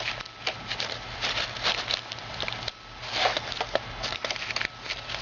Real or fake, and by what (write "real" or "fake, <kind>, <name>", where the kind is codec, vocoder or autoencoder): real